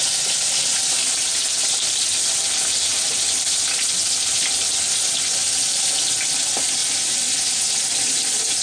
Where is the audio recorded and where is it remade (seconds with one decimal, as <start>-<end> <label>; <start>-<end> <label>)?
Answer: 0.0-8.6 recorded